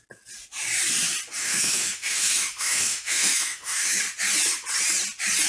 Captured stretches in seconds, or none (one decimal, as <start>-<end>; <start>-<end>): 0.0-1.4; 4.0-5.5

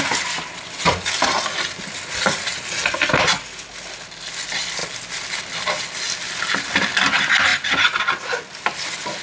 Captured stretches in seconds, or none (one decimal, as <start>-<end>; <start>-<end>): 0.0-9.2

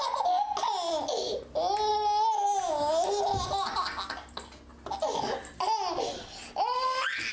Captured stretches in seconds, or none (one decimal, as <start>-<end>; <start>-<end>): 0.0-7.3